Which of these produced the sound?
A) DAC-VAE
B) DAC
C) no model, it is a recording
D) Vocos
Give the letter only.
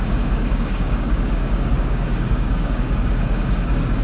B